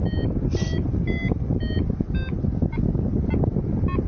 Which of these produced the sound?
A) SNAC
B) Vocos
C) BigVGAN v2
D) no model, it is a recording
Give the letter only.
D